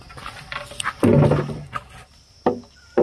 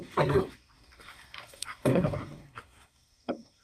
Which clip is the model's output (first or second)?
second